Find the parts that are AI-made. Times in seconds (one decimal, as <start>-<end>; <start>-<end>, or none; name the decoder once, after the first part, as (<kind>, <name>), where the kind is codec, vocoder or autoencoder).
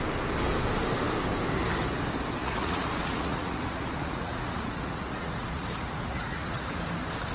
2.4-6.8 (vocoder, Vocos)